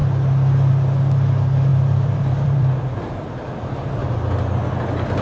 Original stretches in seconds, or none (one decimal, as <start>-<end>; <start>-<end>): 0.0-1.7; 3.0-4.0; 4.6-5.2